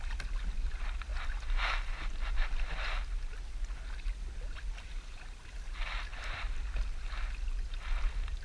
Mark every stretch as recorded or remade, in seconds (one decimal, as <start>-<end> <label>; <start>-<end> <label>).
0.0-8.4 recorded